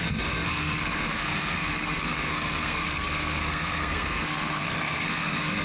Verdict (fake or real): fake